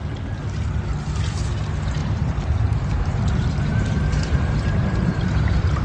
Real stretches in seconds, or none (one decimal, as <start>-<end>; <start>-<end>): 0.0-2.0